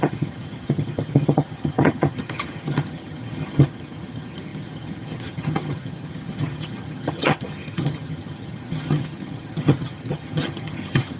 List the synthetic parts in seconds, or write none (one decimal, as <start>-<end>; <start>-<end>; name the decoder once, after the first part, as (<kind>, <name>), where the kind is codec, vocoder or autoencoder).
0.0-11.2 (vocoder, HiFi-GAN)